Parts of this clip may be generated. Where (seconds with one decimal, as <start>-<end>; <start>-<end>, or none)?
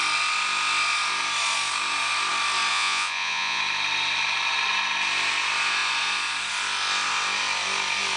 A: 2.7-3.6